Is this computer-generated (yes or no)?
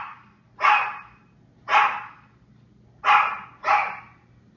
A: no